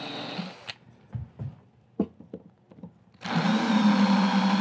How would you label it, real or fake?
real